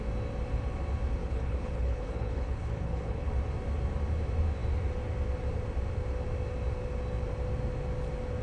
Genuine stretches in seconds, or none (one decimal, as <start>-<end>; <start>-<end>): 0.0-1.2; 3.3-8.4